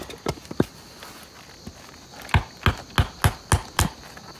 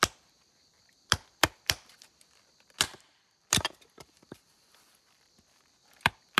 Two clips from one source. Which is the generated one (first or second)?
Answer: second